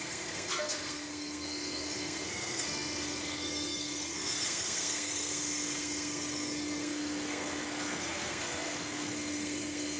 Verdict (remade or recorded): remade